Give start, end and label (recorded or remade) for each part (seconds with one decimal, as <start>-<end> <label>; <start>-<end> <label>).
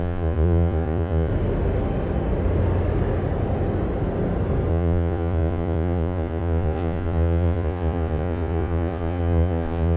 0.0-1.3 remade; 1.3-4.7 recorded; 4.7-10.0 remade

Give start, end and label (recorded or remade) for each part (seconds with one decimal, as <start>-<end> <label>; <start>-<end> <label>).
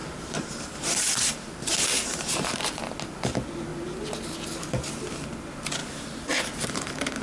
0.0-2.8 remade; 2.8-5.8 recorded; 5.8-7.2 remade